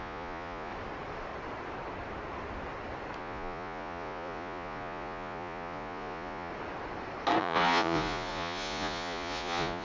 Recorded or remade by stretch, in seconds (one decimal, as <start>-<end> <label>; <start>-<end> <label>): 0.0-0.7 remade; 0.7-3.2 recorded; 3.2-6.5 remade; 6.5-7.4 recorded; 7.4-9.8 remade